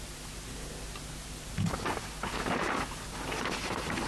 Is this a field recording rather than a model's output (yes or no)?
yes